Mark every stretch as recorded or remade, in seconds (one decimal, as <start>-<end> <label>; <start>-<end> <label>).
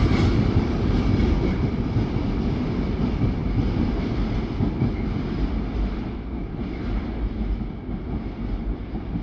0.0-3.4 remade; 3.4-5.4 recorded; 5.4-9.2 remade